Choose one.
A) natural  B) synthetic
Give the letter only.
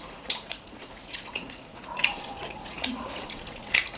B